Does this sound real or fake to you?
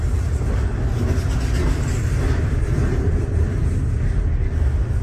real